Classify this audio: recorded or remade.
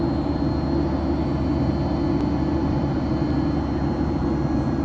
recorded